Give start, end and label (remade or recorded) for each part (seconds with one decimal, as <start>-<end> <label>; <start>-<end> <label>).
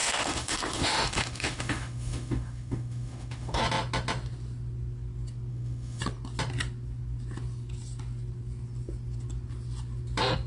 0.0-3.6 remade; 3.6-5.5 recorded; 5.5-6.0 remade; 6.0-10.5 recorded